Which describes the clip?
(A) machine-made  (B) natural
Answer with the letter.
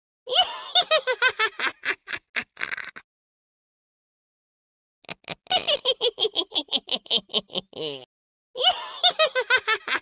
B